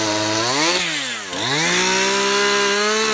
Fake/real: real